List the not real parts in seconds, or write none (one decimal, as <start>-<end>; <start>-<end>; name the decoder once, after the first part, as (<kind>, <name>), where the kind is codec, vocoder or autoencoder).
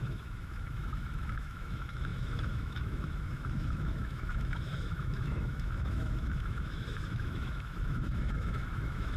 0.0-9.2 (autoencoder, DAC-VAE)